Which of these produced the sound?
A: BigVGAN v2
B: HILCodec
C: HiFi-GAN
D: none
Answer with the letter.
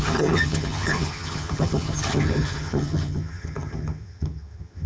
C